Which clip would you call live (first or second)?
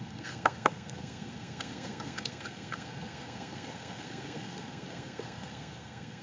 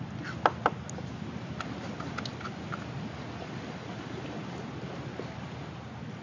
second